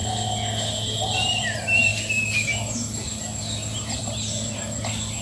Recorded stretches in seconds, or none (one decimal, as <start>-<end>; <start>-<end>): 1.9-5.2